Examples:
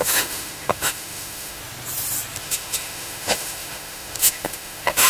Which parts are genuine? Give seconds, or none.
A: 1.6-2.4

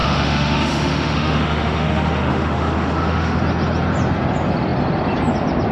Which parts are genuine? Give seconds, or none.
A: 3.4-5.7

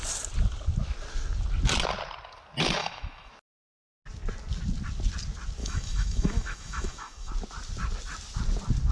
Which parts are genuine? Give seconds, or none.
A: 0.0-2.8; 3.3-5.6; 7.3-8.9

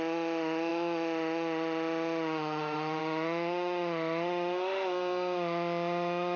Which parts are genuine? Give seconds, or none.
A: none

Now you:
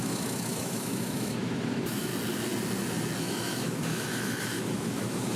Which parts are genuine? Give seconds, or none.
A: 2.1-3.2